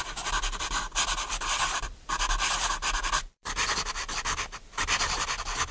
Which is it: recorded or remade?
remade